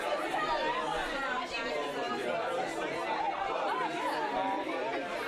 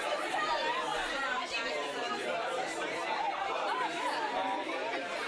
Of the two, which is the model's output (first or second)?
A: second